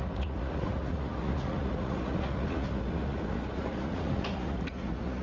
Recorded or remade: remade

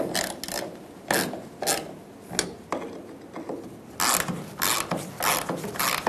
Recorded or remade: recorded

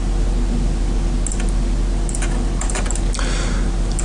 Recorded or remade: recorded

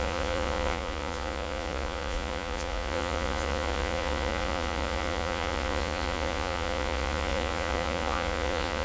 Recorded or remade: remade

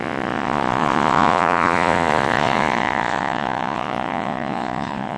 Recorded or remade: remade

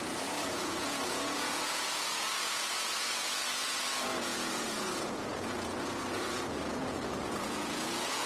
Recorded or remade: remade